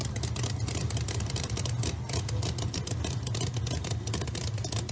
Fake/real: real